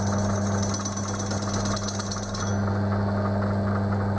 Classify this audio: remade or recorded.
recorded